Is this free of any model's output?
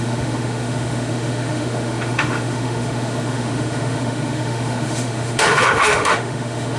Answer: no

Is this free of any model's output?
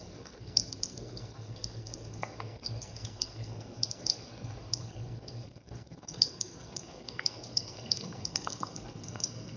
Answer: no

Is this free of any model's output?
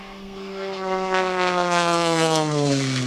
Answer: no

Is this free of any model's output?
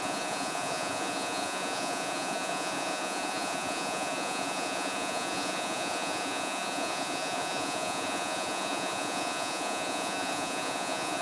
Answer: no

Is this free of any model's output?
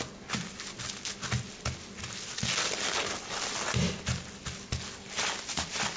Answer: yes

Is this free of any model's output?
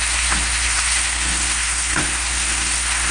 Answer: no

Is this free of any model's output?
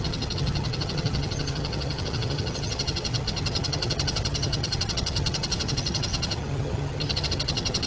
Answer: no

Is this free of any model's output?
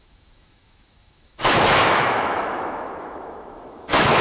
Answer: no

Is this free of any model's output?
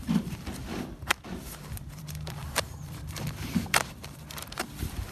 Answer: no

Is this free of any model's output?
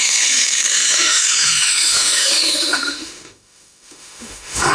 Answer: no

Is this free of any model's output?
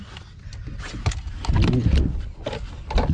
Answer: yes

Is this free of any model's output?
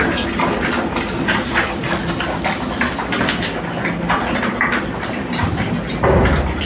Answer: yes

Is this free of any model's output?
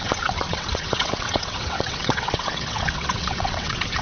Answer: no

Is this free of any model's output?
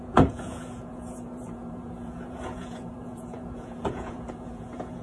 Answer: no